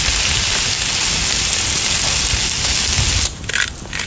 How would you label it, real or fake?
real